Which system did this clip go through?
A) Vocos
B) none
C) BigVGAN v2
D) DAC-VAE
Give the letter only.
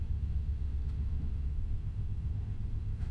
D